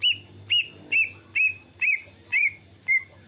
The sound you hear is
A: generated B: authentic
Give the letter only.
B